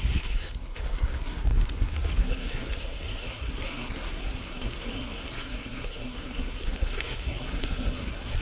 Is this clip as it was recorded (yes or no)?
no